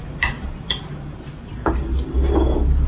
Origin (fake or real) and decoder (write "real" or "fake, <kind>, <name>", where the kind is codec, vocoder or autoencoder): fake, vocoder, BigVGAN v2